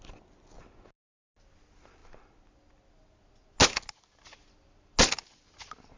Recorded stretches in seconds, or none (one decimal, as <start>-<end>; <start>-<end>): 0.0-6.0